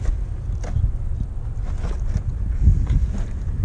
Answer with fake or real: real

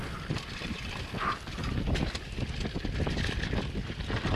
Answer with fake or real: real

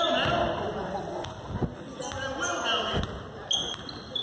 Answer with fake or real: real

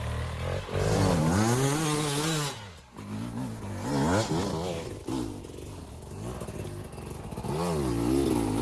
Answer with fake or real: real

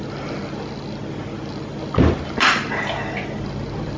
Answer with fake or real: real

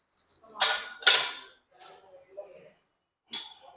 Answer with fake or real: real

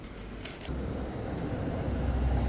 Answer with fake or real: real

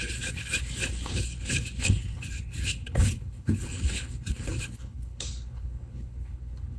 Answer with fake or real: fake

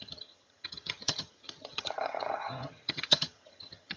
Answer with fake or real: fake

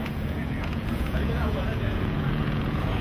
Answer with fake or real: fake